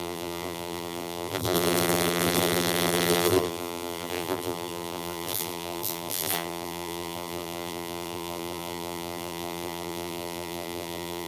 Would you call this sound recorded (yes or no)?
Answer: no